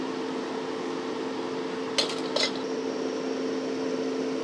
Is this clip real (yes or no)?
yes